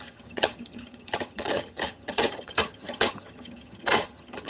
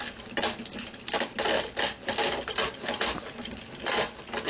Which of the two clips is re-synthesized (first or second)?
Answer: first